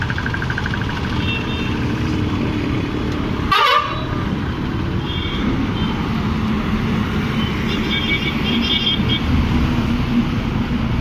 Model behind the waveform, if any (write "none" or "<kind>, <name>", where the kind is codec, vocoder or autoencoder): none